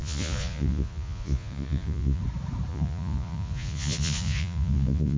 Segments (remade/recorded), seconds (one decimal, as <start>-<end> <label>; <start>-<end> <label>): 0.0-2.2 remade; 2.2-2.7 recorded; 2.7-5.2 remade